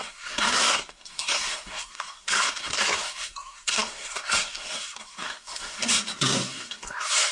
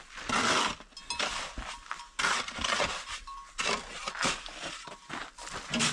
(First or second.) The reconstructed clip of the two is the first